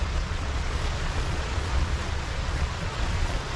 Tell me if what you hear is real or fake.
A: fake